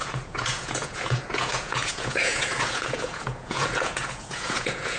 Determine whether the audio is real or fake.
fake